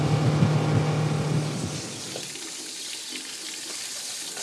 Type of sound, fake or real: real